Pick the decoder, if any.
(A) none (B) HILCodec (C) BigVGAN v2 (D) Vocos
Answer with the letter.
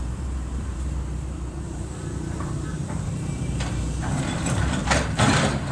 C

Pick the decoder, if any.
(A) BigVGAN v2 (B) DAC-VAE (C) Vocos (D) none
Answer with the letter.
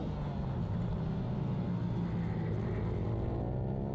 D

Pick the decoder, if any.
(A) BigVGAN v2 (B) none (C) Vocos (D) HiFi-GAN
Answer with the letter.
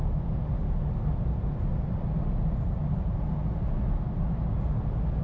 B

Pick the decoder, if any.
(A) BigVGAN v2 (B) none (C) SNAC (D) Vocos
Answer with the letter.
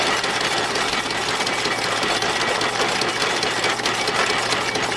B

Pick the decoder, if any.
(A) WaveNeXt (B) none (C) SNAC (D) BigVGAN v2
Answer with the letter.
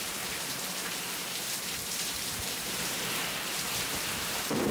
D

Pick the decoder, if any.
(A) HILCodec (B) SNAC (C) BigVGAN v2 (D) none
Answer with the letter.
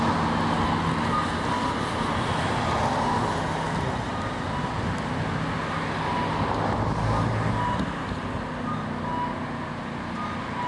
D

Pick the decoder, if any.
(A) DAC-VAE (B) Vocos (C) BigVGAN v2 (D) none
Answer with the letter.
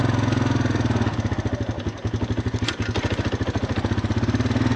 D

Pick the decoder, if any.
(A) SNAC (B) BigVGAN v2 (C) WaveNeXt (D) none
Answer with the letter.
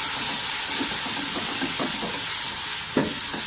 D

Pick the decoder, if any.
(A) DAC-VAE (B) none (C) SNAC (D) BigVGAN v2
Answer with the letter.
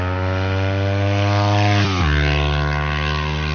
B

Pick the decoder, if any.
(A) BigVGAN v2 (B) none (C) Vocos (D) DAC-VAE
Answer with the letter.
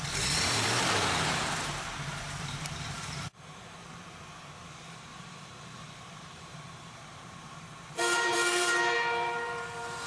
A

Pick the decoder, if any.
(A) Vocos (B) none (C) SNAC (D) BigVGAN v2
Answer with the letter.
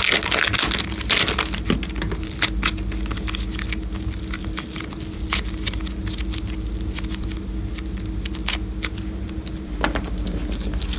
B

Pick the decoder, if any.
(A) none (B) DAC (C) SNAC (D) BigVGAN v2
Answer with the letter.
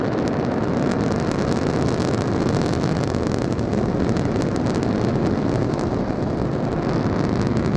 A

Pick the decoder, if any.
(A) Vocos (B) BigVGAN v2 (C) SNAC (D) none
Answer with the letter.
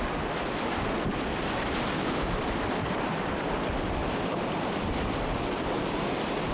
B